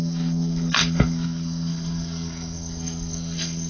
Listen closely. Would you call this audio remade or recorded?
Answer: remade